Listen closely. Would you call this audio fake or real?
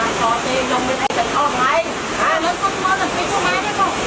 real